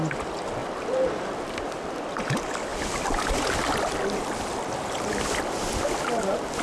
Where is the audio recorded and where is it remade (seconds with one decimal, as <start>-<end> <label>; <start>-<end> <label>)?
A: 0.0-6.6 recorded